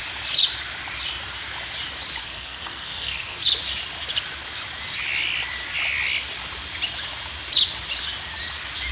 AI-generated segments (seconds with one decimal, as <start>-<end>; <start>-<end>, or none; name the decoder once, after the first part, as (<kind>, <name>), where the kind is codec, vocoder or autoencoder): 2.2-3.4 (codec, SNAC)